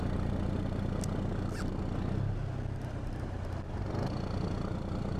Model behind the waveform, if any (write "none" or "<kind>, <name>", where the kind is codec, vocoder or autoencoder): none